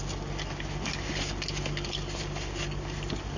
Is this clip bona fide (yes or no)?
yes